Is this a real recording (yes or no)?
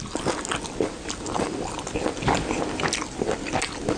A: yes